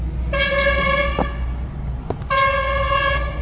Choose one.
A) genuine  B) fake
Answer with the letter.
A